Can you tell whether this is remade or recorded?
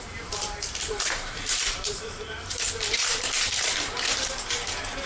remade